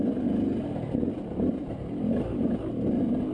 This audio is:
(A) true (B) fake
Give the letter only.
A